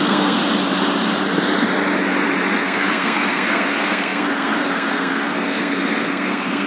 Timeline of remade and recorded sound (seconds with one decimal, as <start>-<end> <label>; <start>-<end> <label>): 0.0-0.4 remade; 0.4-2.6 recorded; 2.6-6.7 remade